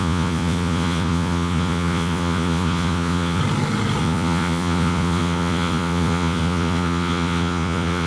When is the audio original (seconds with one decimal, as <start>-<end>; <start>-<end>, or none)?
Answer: 3.4-4.0